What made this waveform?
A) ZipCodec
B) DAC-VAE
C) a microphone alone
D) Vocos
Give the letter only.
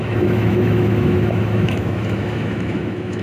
B